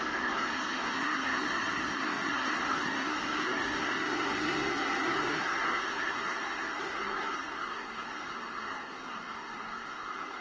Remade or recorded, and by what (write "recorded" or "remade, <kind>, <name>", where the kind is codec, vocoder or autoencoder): remade, codec, SNAC